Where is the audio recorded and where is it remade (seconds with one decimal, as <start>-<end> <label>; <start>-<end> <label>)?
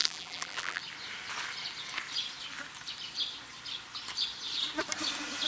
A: 0.0-0.8 remade; 0.8-5.5 recorded